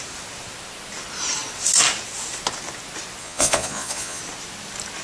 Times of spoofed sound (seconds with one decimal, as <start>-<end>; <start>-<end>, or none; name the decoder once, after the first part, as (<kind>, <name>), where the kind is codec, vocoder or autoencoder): 3.2-4.2 (vocoder, Vocos)